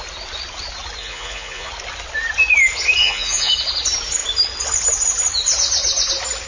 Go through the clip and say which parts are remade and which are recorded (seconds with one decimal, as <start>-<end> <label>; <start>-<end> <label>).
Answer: 0.0-1.0 recorded; 1.0-1.7 remade; 1.7-3.0 recorded; 3.0-3.5 remade; 3.5-6.5 recorded